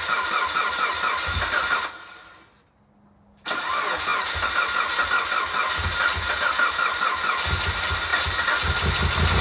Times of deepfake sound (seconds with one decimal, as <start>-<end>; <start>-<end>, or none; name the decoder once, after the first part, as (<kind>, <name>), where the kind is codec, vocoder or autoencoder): none